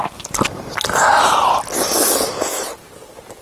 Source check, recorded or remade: recorded